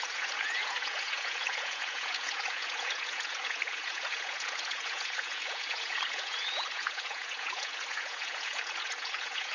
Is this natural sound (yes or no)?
no